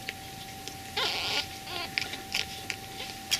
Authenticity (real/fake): real